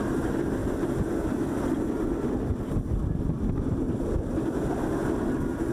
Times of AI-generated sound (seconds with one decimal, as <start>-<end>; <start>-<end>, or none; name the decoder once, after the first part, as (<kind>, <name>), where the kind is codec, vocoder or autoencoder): none